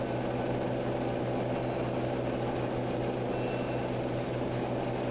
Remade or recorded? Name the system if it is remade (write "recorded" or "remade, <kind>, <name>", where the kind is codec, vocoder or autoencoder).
recorded